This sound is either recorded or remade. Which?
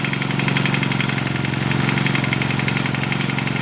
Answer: recorded